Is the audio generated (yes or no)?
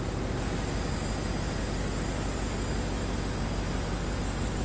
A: no